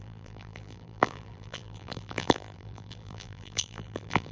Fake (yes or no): yes